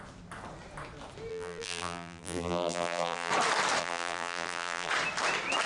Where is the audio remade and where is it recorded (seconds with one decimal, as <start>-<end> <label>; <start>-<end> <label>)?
0.0-1.3 recorded; 1.3-3.3 remade; 3.3-3.8 recorded; 3.8-4.9 remade; 4.9-5.7 recorded